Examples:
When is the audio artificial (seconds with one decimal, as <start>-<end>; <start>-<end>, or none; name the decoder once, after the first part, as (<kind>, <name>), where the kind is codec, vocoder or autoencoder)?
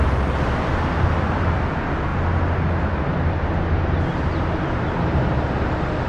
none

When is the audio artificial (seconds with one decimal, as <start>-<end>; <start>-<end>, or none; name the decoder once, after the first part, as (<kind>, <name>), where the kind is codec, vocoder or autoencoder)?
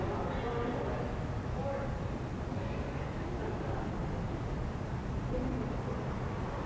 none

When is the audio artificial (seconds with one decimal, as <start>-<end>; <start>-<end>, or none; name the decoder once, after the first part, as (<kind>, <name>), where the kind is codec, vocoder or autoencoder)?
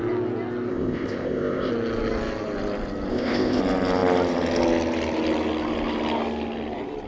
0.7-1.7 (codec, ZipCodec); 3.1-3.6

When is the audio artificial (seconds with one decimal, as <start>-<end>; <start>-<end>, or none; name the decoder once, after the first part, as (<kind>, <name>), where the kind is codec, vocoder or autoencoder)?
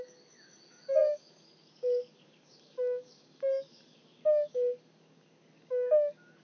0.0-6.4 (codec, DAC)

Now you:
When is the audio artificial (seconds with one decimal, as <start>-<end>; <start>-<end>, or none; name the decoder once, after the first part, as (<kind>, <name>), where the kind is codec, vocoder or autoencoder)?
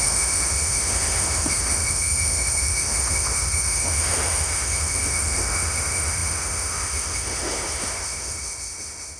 0.0-9.2 (autoencoder, DAC-VAE)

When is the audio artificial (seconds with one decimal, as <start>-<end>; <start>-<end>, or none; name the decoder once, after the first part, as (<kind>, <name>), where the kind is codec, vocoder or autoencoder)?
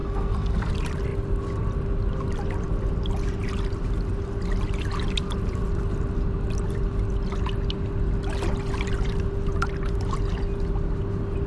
0.0-0.7 (codec, SNAC)